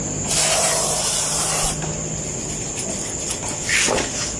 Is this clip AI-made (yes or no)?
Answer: no